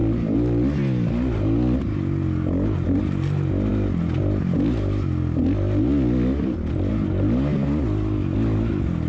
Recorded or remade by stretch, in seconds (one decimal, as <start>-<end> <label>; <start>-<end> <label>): 0.0-9.1 recorded